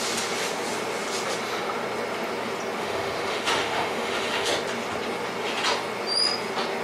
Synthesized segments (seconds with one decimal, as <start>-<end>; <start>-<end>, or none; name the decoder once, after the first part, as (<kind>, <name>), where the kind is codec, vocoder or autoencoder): 2.8-4.5 (autoencoder, DAC-VAE)